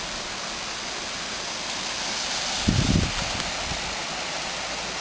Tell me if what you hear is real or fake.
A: real